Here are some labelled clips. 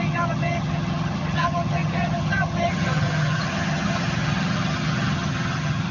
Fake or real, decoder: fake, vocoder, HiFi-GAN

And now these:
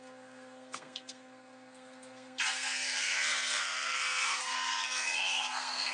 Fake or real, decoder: fake, codec, SNAC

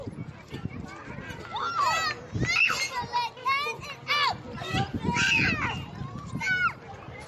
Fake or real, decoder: real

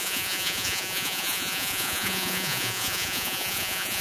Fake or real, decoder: fake, vocoder, Vocos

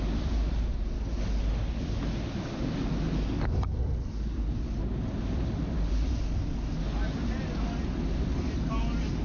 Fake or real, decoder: real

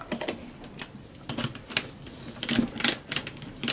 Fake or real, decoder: real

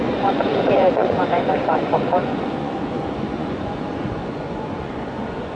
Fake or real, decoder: fake, vocoder, Vocos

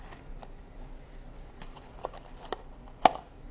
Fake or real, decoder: real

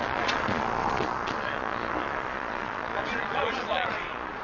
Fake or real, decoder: fake, vocoder, Vocos